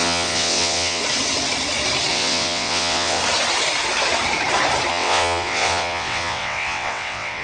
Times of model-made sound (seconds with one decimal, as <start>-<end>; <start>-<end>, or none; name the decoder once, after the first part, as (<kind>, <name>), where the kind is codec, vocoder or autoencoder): 0.0-1.0 (vocoder, WaveNeXt); 2.1-3.2; 4.9-7.4